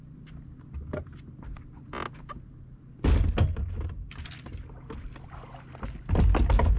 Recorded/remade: recorded